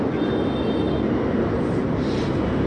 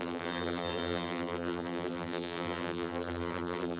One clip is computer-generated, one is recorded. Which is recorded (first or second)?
first